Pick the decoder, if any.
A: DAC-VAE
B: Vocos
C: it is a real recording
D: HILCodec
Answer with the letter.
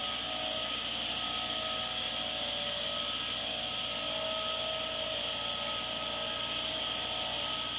C